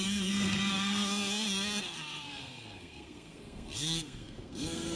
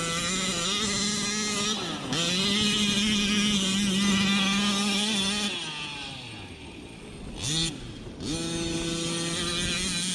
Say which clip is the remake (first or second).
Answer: first